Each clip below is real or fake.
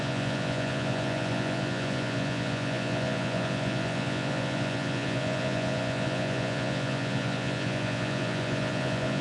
fake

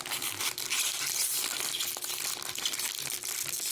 real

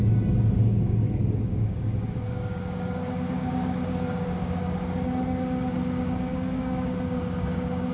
fake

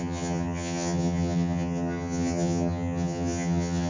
fake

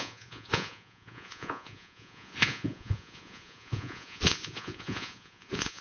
fake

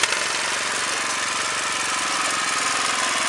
real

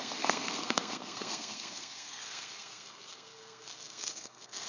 fake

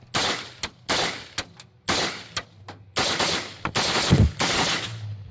real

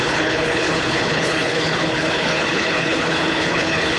fake